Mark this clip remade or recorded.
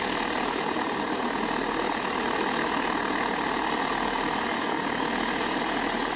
recorded